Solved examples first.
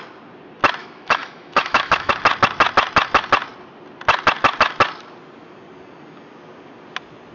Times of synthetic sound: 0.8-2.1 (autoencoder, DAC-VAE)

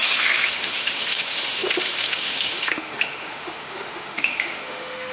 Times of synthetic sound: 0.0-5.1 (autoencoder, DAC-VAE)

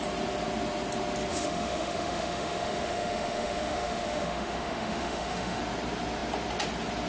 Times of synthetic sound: 1.3-5.6 (autoencoder, DAC-VAE)

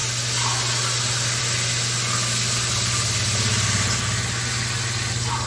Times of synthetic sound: none